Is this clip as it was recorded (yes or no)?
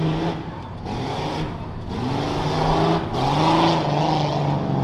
yes